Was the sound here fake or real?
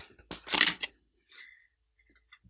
real